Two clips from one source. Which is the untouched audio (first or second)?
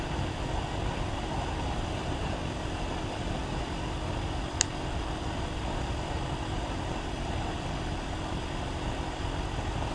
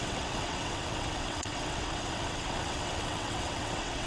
first